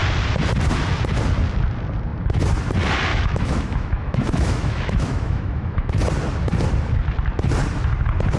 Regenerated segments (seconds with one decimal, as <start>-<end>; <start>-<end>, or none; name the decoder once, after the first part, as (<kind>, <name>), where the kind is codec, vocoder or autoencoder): 3.1-5.9 (autoencoder, DAC-VAE)